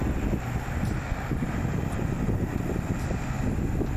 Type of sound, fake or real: real